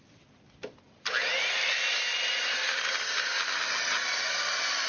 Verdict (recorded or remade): recorded